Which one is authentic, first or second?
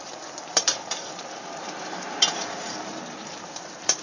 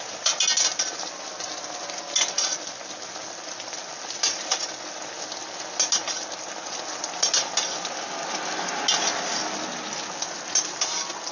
second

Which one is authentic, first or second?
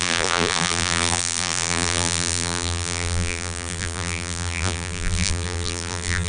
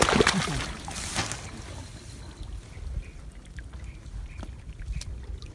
second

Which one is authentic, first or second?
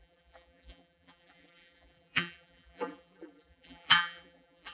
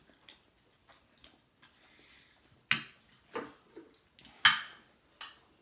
second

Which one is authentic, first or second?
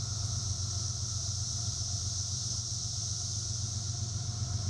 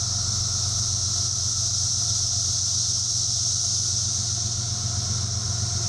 second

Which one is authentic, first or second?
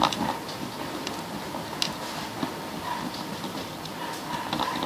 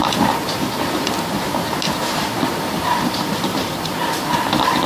first